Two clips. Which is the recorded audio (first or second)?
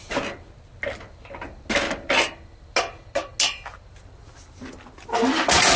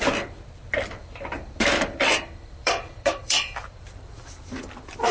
first